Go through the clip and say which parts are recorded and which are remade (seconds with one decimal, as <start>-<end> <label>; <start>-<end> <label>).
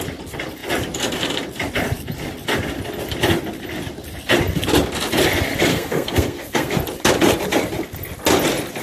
0.0-5.7 recorded; 5.7-6.7 remade; 6.7-8.8 recorded